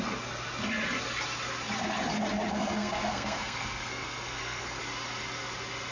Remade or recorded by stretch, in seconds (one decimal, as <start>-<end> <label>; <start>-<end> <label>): 0.0-2.5 recorded; 2.5-4.8 remade; 4.8-5.9 recorded

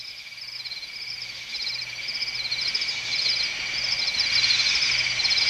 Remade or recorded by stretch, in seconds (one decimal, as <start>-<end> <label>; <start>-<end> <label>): 0.0-5.5 recorded

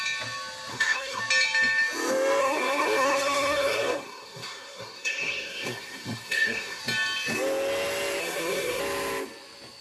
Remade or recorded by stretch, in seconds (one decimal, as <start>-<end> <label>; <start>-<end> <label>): 0.0-0.7 recorded; 0.7-1.2 remade; 1.2-2.4 recorded; 2.4-6.8 remade; 6.8-8.2 recorded; 8.2-8.8 remade; 8.8-9.8 recorded

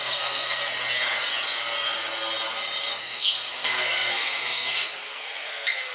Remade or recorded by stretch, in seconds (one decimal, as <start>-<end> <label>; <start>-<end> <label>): 0.0-0.6 remade; 0.6-3.0 recorded; 3.0-5.9 remade

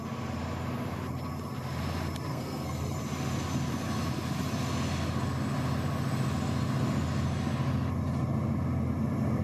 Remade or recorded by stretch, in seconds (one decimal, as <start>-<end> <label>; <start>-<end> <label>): 0.0-2.3 recorded; 2.3-2.8 remade; 2.8-9.4 recorded

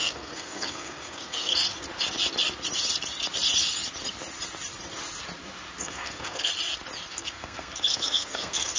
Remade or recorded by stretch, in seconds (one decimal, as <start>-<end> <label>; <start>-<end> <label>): 0.0-1.5 remade; 1.5-5.8 recorded; 5.8-6.5 remade; 6.5-7.1 recorded; 7.1-8.8 remade

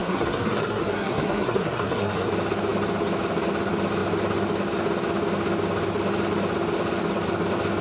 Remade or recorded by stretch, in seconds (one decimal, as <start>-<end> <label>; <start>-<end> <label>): 0.0-2.3 remade; 2.3-7.8 recorded

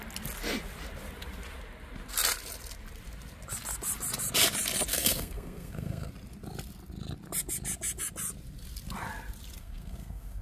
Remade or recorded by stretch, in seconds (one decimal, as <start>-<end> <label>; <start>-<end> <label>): 0.0-4.9 recorded; 4.9-6.1 remade; 6.1-9.6 recorded; 9.6-10.4 remade